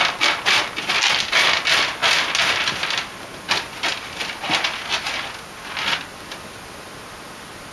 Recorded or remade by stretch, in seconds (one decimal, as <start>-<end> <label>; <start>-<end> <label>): 0.0-7.7 recorded